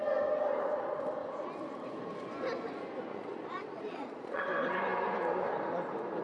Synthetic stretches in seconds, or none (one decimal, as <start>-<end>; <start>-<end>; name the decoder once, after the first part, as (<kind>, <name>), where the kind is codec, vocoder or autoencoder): 3.1-4.4 (vocoder, Vocos)

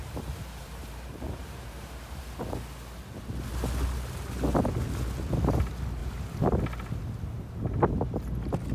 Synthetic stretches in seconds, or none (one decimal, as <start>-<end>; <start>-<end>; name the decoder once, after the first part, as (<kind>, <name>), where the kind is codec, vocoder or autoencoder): 0.0-2.2 (vocoder, BigVGAN v2); 6.0-6.6

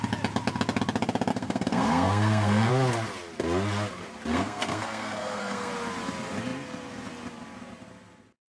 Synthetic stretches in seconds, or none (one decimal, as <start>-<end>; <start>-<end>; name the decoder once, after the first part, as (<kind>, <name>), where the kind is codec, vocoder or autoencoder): 1.3-2.7 (codec, SNAC); 4.3-5.7

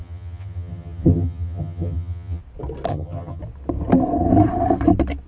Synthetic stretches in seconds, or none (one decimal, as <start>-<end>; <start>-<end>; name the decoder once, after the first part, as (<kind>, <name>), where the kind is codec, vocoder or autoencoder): 0.0-2.4 (vocoder, HiFi-GAN); 2.9-3.4

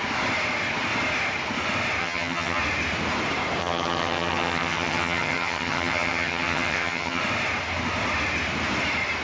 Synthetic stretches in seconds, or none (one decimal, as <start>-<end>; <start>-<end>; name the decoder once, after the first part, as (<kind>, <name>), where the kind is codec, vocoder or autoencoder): 2.0-2.6 (vocoder, HiFi-GAN); 3.6-7.2

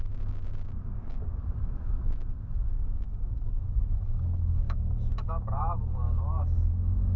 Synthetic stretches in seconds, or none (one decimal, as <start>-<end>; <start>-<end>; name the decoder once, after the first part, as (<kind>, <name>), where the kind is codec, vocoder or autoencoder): 0.9-1.4 (codec, DAC); 2.6-7.2

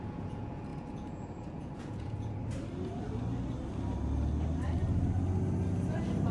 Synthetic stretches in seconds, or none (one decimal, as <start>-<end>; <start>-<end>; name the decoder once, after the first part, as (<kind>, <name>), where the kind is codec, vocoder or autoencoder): 0.0-2.4 (vocoder, Vocos)

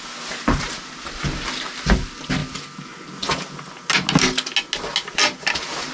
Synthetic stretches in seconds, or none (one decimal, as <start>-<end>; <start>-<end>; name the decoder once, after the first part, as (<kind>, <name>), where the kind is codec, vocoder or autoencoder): none